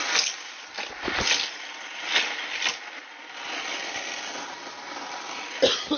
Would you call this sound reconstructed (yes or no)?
no